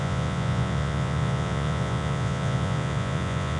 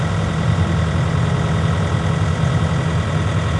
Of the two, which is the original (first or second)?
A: second